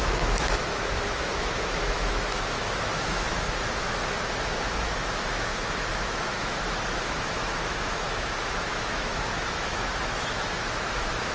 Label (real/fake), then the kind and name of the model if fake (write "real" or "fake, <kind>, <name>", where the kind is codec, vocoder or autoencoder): fake, autoencoder, DAC-VAE